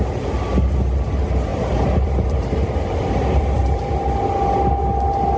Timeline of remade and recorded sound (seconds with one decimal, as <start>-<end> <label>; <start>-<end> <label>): 0.0-1.5 recorded; 1.5-3.9 remade; 3.9-5.4 recorded